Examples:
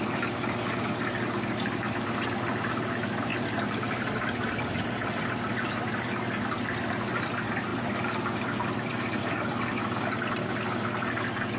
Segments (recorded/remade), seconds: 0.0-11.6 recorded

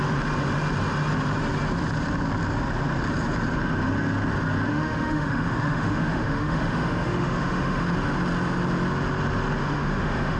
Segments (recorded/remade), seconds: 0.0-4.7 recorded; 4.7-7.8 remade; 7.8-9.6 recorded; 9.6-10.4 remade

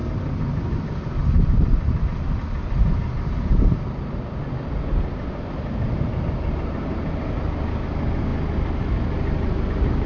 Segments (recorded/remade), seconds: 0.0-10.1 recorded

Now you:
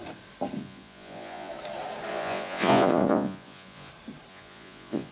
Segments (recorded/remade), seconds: 0.0-0.6 recorded; 0.6-1.5 remade; 1.5-2.1 recorded; 2.1-3.9 remade; 3.9-4.3 recorded; 4.3-5.1 remade

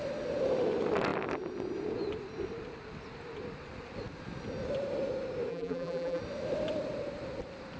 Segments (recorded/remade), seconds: 0.0-5.5 recorded; 5.5-6.2 remade; 6.2-7.8 recorded